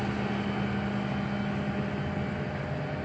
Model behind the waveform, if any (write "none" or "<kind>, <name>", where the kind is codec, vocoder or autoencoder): none